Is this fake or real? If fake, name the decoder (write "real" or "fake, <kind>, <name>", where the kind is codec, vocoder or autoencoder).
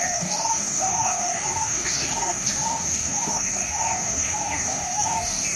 fake, codec, DAC